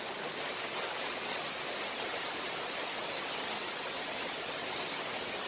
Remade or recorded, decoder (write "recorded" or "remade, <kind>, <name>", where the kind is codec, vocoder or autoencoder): recorded